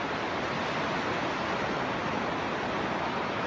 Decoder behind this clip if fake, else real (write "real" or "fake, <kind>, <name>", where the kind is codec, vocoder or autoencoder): real